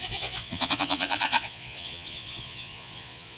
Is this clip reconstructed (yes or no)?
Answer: yes